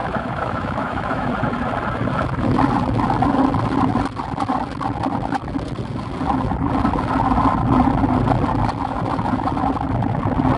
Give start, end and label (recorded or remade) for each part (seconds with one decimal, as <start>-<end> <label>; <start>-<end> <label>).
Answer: 0.0-1.3 remade; 1.3-10.6 recorded